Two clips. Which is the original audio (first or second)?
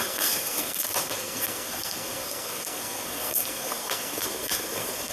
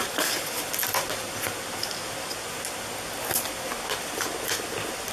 second